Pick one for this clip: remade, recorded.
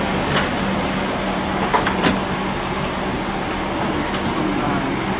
recorded